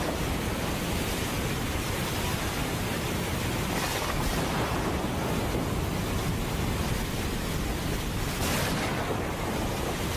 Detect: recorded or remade recorded